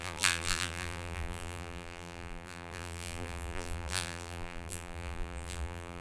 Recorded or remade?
remade